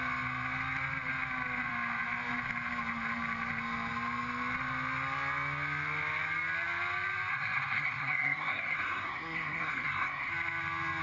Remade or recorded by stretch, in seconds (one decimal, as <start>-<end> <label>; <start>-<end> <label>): 0.0-7.3 recorded; 7.3-10.3 remade; 10.3-11.0 recorded